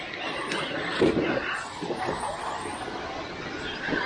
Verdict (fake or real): real